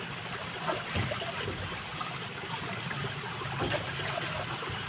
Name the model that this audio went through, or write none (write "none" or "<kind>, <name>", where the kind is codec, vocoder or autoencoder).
none